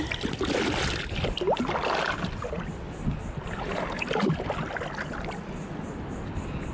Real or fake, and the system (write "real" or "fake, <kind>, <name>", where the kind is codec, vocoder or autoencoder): real